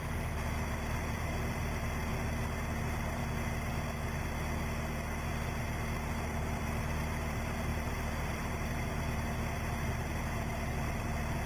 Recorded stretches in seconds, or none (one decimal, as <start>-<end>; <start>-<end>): 2.1-2.8; 3.2-5.6